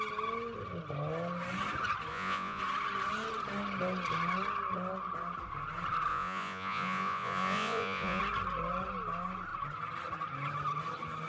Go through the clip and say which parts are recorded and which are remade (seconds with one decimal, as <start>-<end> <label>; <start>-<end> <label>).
0.0-2.1 recorded; 2.1-2.6 remade; 2.6-6.1 recorded; 6.1-8.2 remade; 8.2-11.3 recorded